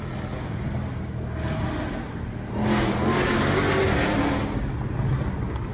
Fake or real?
real